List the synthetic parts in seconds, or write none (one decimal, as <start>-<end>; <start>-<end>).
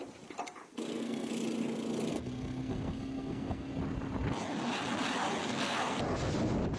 0.6-1.3; 2.1-3.7; 5.4-6.0